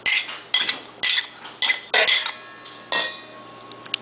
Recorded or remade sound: recorded